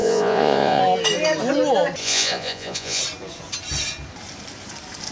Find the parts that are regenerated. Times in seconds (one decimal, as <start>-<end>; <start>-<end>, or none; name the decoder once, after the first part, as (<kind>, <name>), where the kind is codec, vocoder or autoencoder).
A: 0.0-0.8 (vocoder, Vocos); 2.0-3.0